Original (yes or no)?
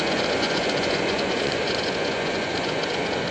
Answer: no